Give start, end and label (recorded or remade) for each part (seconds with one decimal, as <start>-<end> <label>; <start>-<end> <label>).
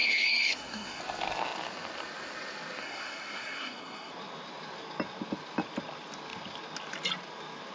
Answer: 0.0-1.0 remade; 1.0-2.8 recorded; 2.8-4.1 remade; 4.1-7.7 recorded